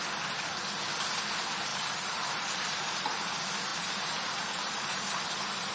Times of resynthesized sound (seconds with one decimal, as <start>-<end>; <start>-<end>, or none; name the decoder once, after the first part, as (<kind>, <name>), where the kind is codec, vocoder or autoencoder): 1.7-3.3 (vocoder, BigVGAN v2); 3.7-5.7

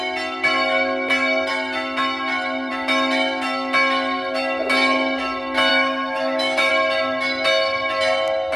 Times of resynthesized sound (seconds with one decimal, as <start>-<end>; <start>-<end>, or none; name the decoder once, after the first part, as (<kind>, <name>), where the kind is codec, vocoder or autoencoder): 5.7-6.7 (autoencoder, DAC-VAE)

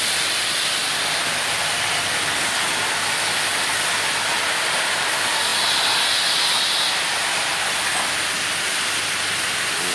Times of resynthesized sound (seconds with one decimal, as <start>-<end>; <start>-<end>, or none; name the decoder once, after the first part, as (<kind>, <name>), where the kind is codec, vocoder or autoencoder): 0.8-2.2 (vocoder, BigVGAN v2)

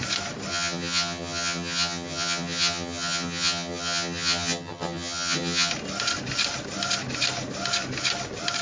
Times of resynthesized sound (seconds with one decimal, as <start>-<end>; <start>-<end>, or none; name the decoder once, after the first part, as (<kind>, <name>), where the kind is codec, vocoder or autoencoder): 0.5-5.7 (vocoder, HiFi-GAN)

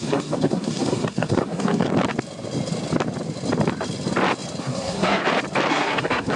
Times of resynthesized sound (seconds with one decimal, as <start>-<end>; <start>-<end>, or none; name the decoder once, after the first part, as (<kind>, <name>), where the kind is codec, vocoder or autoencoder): 0.0-1.9 (codec, SNAC); 4.6-5.2; 5.7-6.4

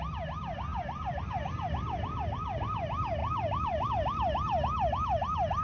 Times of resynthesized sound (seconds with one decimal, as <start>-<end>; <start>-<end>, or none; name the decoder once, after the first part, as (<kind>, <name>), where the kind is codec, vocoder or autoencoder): 3.2-3.9 (vocoder, BigVGAN v2)

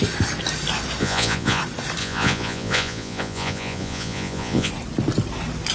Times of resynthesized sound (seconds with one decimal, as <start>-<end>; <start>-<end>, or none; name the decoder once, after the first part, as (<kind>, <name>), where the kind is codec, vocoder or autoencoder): 1.0-1.6 (vocoder, Vocos); 2.0-4.7